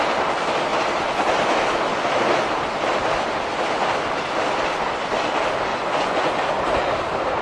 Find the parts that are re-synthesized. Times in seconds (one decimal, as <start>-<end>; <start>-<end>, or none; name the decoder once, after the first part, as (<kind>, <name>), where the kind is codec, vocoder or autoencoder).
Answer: 5.7-6.3 (vocoder, Vocos)

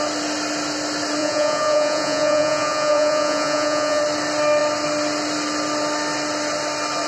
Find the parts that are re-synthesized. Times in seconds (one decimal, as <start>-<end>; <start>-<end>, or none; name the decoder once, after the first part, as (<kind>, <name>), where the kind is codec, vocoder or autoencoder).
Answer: 1.2-4.0 (vocoder, Vocos)